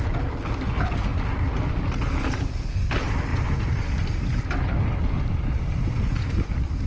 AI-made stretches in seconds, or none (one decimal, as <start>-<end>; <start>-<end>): none